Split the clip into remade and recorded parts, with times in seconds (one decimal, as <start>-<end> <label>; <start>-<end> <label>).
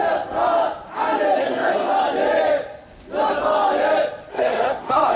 0.0-1.4 recorded; 1.4-1.9 remade; 1.9-4.3 recorded; 4.3-5.2 remade